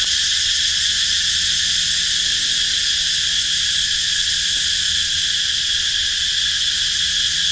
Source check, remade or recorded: recorded